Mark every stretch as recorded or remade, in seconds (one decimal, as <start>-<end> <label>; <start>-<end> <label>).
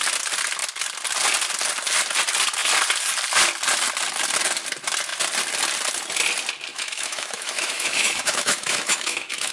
0.0-6.7 recorded; 6.7-9.5 remade